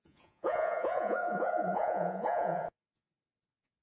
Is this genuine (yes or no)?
no